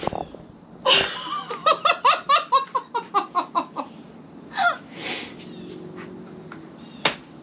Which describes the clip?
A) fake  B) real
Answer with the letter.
B